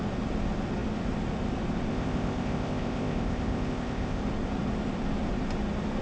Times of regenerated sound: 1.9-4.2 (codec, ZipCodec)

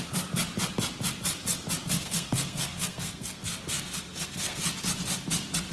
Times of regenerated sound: 2.0-4.6 (codec, SNAC)

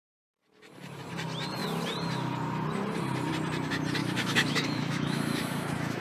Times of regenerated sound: 4.0-6.0 (autoencoder, DAC-VAE)